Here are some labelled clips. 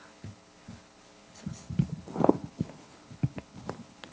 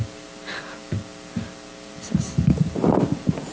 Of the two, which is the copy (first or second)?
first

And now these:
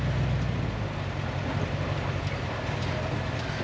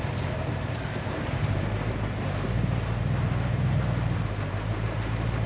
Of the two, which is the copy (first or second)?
second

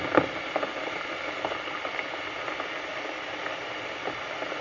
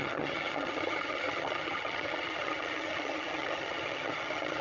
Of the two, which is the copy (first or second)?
second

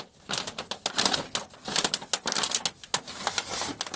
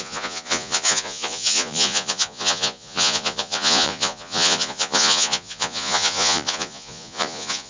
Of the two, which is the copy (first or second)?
second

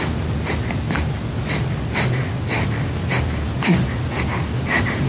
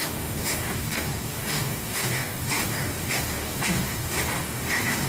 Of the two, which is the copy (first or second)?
second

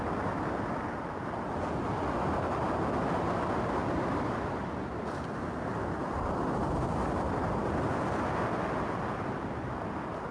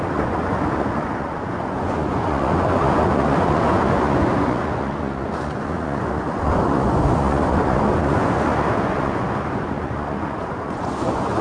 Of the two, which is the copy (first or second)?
second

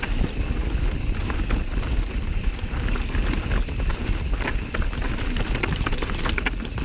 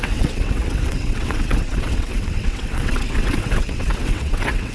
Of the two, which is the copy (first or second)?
second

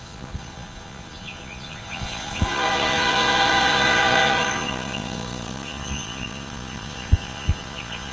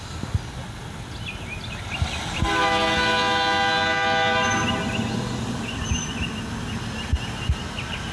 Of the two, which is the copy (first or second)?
first